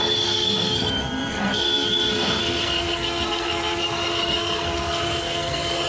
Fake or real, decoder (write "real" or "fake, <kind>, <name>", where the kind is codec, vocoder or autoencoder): fake, codec, SNAC